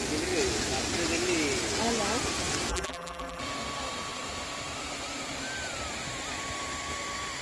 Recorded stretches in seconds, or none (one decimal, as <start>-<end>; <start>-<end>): 0.0-2.7; 3.4-7.4